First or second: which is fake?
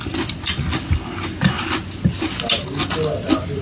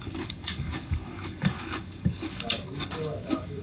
second